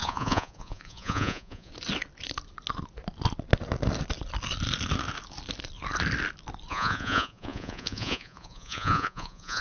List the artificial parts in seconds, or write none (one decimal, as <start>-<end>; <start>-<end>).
0.0-1.7; 6.7-9.6